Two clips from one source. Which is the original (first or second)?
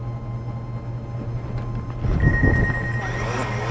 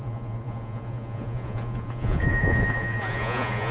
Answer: first